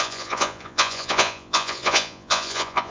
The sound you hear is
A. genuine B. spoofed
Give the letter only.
B